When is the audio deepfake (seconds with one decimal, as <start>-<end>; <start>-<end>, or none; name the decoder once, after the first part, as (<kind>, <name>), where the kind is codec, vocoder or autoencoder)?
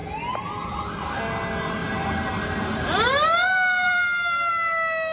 1.8-4.5 (vocoder, BigVGAN v2)